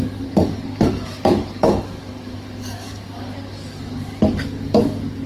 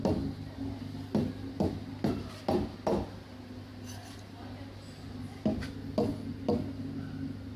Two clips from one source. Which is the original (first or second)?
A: second